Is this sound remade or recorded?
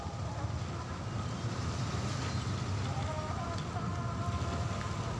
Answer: recorded